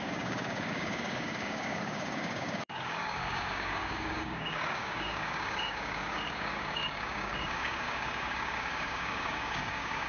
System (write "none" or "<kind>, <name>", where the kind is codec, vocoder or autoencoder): codec, DAC